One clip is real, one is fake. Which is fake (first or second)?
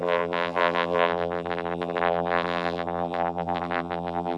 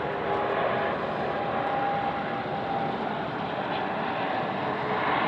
first